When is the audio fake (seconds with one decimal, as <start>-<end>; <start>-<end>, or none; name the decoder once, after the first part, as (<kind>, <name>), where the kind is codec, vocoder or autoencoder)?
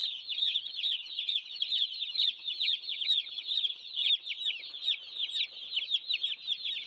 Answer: 0.0-4.1 (vocoder, HiFi-GAN)